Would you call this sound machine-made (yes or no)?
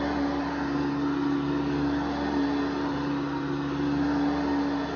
no